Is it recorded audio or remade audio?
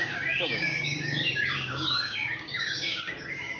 remade